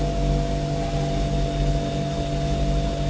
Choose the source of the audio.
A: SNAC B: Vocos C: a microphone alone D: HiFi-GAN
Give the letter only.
C